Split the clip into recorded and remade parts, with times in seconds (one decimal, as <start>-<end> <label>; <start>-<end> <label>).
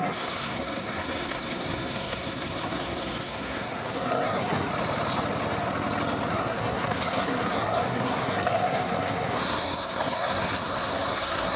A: 0.0-4.7 remade; 4.7-6.3 recorded; 6.3-11.6 remade